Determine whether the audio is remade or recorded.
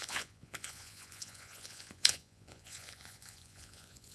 remade